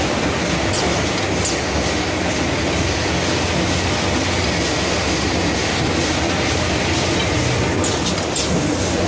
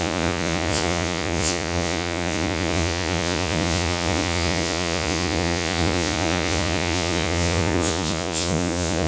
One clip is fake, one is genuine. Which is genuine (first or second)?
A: first